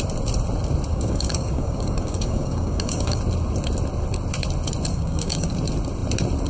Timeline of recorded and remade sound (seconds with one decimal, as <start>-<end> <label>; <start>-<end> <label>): 0.0-0.9 recorded; 0.9-3.2 remade; 3.2-4.9 recorded; 4.9-5.5 remade; 5.5-6.5 recorded